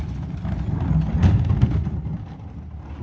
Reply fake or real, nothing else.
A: real